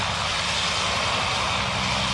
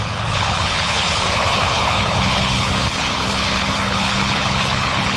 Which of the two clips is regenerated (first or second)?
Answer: second